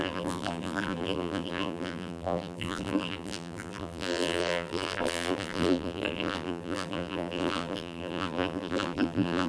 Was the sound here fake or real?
fake